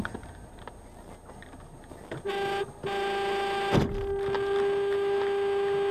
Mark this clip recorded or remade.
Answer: recorded